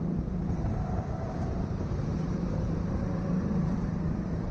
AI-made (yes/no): yes